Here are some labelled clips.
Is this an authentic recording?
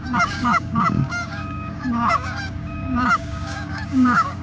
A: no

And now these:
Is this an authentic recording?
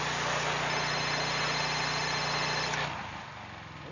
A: yes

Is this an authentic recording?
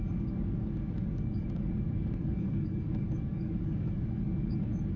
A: no